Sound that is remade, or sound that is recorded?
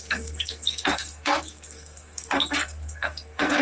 remade